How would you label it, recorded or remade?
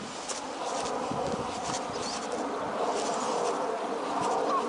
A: recorded